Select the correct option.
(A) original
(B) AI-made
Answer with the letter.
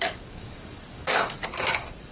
B